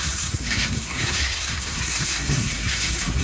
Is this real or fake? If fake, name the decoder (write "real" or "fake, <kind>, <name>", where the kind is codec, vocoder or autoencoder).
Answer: fake, codec, SNAC